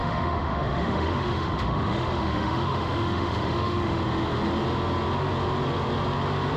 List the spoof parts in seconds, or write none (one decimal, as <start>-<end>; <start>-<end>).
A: 0.0-4.0

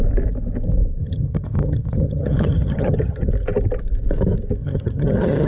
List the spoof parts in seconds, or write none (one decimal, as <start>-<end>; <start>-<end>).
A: 1.0-3.3; 4.6-5.5

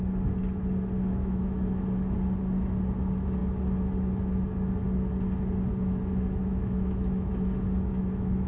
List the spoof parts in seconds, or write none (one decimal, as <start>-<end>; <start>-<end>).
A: 1.1-1.8; 6.5-8.5

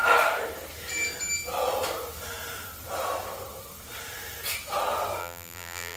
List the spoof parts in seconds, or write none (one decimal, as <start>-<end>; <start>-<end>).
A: 5.2-6.0

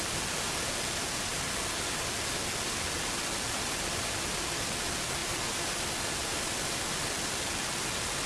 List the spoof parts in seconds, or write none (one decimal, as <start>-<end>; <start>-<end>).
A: 5.2-7.3

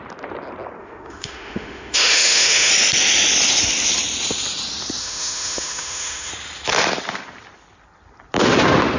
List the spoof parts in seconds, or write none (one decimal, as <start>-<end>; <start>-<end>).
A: 0.8-2.7; 5.0-6.3

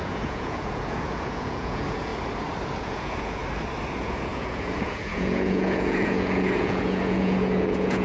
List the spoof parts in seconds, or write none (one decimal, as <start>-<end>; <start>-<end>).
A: 0.0-2.1; 2.8-3.4; 3.9-8.0